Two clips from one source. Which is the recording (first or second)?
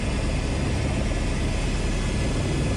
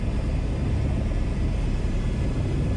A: first